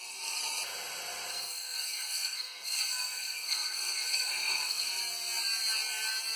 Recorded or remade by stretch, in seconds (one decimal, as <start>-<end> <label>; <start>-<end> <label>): 0.0-0.4 remade; 0.4-1.3 recorded; 1.3-5.0 remade; 5.0-6.4 recorded